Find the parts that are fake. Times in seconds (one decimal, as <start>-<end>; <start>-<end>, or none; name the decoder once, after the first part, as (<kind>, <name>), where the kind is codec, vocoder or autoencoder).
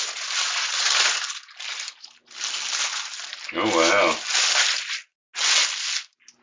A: none